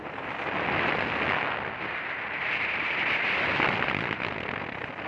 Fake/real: real